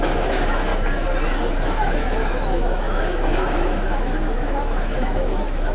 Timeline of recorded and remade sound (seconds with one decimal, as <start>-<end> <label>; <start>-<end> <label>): 0.0-0.7 remade; 0.7-1.5 recorded; 1.5-5.7 remade